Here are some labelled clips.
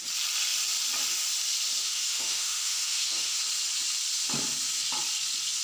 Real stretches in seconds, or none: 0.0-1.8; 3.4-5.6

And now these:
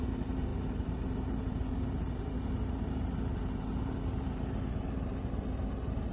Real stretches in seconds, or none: none

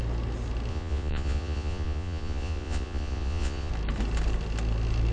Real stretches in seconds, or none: 0.0-0.7; 3.7-5.1

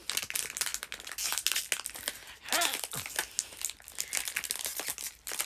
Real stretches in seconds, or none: 0.0-5.5

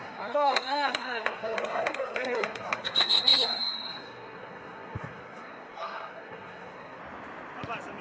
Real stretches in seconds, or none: 7.0-8.0

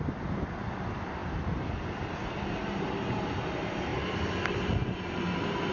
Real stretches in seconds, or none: 1.2-2.3